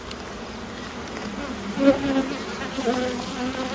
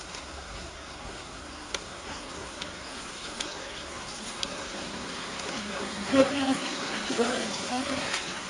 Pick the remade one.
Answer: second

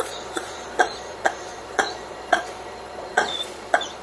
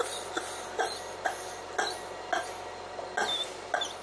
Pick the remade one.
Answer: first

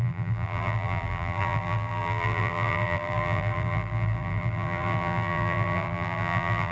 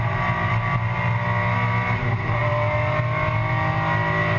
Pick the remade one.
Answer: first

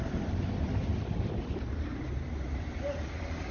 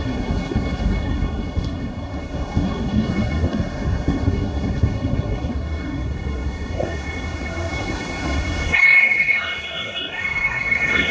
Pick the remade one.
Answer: second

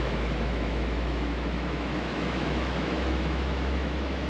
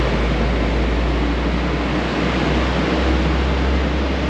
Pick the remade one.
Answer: first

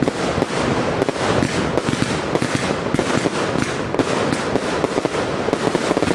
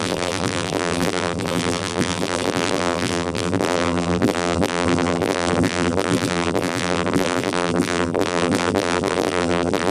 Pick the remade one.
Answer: second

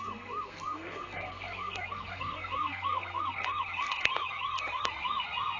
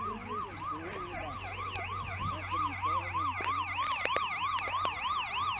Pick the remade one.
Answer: first